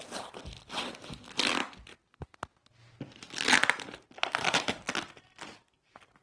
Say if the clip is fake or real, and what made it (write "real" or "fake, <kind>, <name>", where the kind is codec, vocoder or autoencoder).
real